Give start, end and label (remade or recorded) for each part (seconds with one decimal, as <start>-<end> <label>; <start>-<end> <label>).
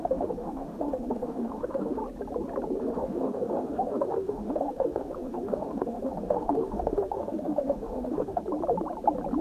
0.0-2.0 remade; 2.0-2.8 recorded; 2.8-8.4 remade; 8.4-9.4 recorded